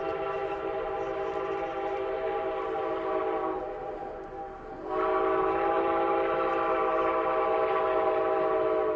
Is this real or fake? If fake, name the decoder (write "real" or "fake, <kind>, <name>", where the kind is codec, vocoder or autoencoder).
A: real